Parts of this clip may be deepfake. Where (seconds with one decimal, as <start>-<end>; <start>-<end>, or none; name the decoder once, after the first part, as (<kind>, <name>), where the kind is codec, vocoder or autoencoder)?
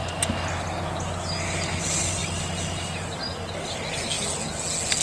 none